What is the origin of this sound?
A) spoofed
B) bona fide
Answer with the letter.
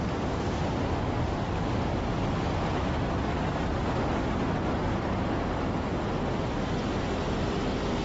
B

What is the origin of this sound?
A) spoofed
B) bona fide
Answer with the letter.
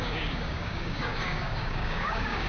A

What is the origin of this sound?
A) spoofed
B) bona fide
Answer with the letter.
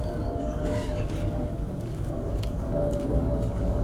A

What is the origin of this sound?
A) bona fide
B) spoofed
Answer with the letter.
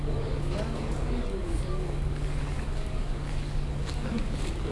B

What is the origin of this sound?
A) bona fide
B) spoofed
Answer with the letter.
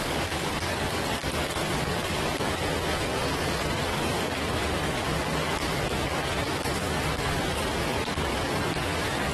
B